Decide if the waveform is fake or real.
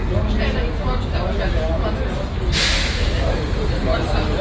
real